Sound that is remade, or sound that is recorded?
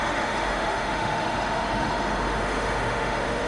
remade